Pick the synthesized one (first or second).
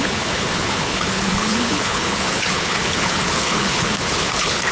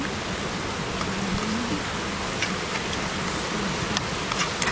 first